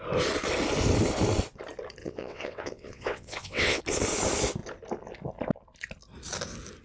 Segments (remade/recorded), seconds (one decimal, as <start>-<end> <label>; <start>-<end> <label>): 0.0-2.0 recorded; 2.0-3.8 remade; 3.8-6.8 recorded